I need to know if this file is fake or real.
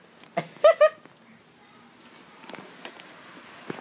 real